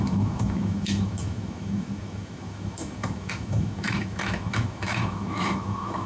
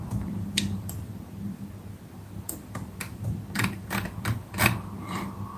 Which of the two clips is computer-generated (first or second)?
first